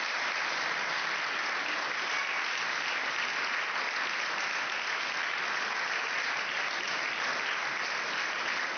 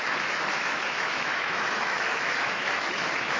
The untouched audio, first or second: first